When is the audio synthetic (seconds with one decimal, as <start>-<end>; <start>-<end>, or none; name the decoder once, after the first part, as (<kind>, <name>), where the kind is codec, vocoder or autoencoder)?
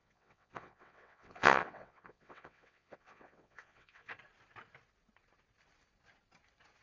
0.0-4.1 (vocoder, WaveNeXt)